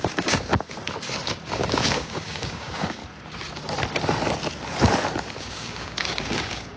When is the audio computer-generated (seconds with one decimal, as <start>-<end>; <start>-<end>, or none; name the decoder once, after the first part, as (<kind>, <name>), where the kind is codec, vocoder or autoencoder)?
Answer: 0.0-0.5 (codec, DAC); 1.1-3.0; 5.4-6.8